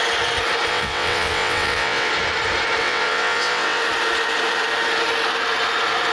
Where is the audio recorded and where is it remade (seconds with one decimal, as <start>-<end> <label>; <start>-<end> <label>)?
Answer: 0.0-0.7 recorded; 0.7-2.1 remade; 2.1-2.8 recorded; 2.8-3.8 remade; 3.8-6.1 recorded

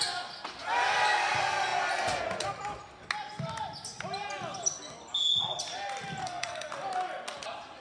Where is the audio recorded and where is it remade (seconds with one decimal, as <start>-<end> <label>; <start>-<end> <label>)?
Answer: 0.0-6.2 recorded; 6.2-6.7 remade; 6.7-7.8 recorded

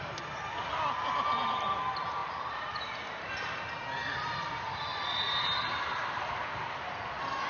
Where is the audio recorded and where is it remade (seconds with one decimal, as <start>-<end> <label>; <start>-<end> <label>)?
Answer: 0.0-7.5 recorded